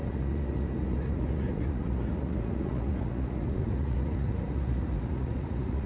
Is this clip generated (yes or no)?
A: yes